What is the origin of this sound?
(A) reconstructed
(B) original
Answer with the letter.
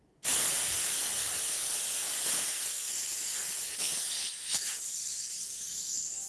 A